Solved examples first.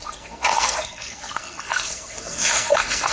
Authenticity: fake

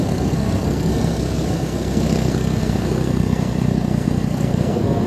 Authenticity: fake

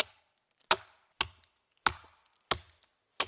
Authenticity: real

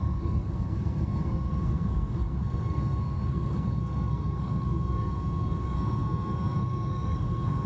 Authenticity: fake